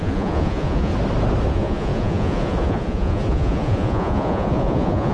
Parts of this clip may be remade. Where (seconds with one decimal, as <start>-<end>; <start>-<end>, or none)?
0.0-0.9; 1.5-5.1